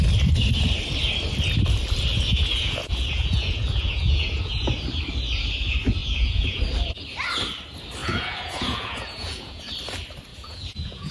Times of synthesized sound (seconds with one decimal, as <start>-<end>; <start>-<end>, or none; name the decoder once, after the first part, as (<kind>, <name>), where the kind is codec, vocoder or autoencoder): 2.1-4.7 (vocoder, Vocos); 6.0-6.6; 8.0-9.6; 10.3-11.1